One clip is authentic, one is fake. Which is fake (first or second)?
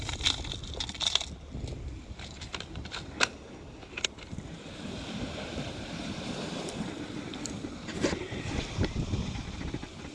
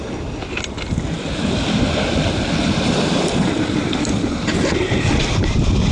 first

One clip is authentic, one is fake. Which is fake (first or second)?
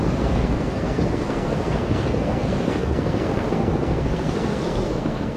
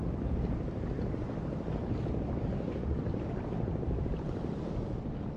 first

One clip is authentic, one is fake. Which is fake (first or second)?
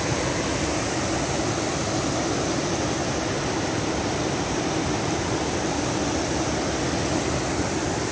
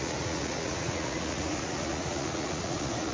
second